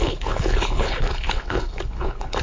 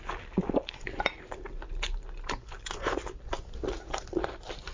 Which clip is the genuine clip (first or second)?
second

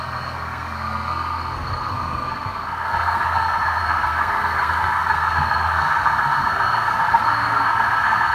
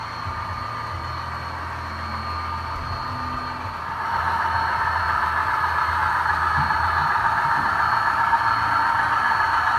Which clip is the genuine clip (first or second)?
second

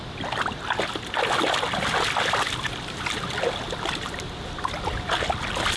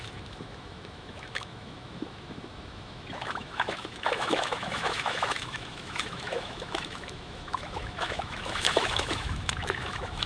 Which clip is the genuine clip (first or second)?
first